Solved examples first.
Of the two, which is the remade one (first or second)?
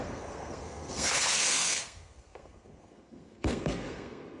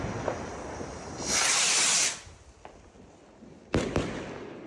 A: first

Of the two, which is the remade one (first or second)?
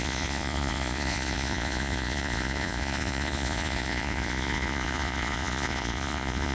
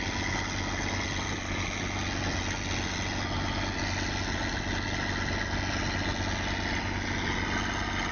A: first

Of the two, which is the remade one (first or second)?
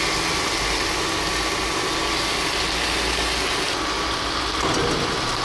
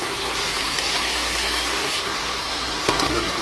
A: second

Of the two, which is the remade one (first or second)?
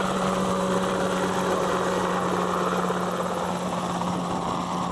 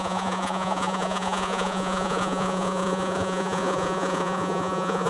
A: second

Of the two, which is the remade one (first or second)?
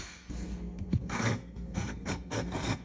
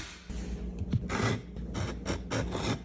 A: first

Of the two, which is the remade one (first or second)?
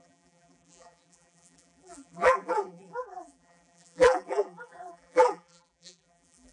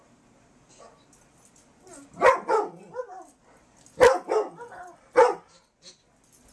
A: first